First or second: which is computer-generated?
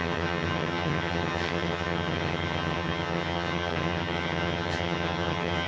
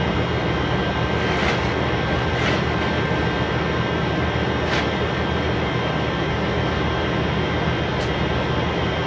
first